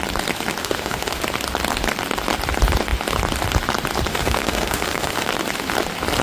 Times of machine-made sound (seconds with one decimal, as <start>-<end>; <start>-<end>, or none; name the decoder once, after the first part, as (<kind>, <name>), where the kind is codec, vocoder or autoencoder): 0.6-1.2 (autoencoder, DAC-VAE); 4.1-5.3